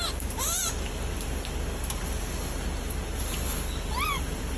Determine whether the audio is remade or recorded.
recorded